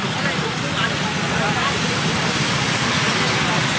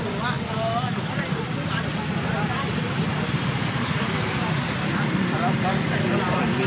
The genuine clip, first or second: first